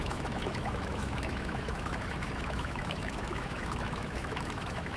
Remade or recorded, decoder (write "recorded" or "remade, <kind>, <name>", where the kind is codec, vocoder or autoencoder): remade, autoencoder, DAC-VAE